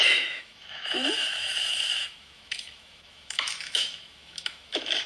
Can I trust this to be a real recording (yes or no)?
no